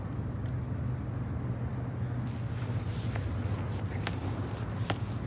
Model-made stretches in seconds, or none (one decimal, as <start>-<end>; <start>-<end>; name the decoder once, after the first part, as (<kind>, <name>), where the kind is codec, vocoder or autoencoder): none